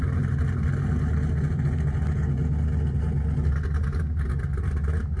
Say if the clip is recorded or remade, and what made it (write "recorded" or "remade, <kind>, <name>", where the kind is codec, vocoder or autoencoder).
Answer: recorded